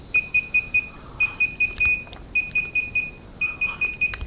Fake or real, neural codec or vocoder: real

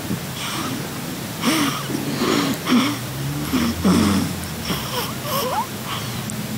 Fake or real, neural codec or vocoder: real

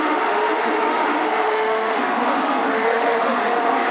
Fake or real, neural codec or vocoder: fake, autoencoder, DAC-VAE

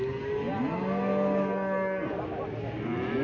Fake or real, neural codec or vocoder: real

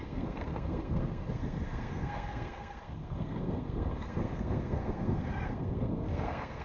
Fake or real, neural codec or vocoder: fake, codec, SNAC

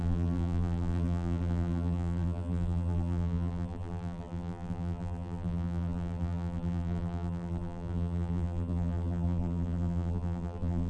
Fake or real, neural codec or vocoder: fake, vocoder, BigVGAN v2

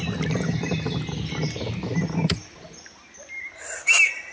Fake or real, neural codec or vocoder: real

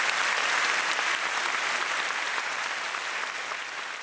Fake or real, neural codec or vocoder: real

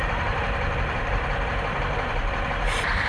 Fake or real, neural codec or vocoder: fake, vocoder, BigVGAN v2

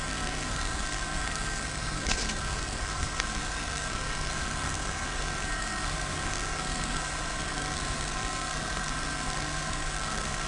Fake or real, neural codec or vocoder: fake, codec, SNAC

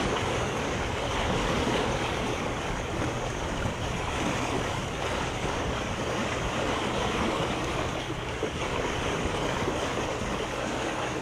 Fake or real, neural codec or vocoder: fake, codec, DAC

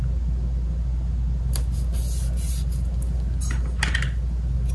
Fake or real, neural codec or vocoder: real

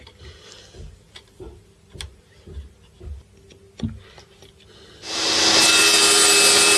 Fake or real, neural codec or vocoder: real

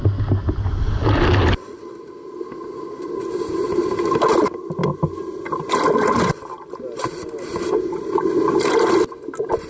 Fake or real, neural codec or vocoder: real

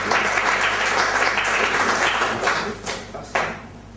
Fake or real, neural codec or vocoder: fake, vocoder, BigVGAN v2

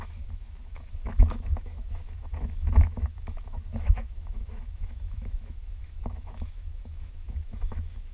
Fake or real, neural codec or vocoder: fake, autoencoder, DAC-VAE